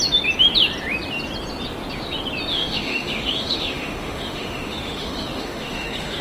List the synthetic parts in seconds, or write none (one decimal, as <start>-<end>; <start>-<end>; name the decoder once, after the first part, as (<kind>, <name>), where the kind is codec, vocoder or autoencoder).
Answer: 2.5-6.2 (autoencoder, DAC-VAE)